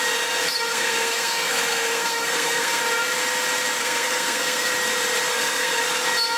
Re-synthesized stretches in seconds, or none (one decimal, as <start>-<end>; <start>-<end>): 0.7-2.8; 3.8-4.7; 5.3-5.8